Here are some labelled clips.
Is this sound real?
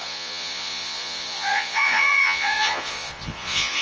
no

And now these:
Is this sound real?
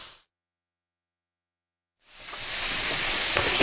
no